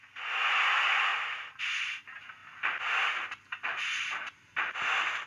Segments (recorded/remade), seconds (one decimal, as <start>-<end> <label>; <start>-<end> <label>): 0.0-5.3 recorded